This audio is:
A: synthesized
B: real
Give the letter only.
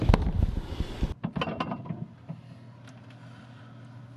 B